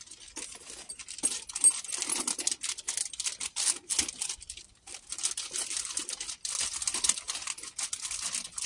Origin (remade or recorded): recorded